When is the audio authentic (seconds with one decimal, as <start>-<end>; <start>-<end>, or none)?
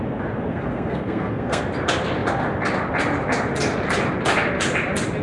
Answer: 0.0-0.5; 1.6-5.2